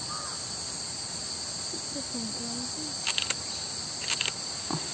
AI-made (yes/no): no